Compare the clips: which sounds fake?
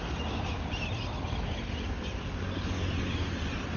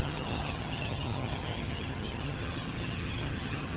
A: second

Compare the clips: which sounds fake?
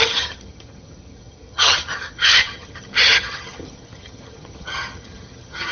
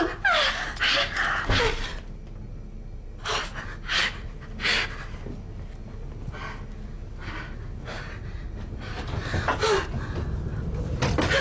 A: first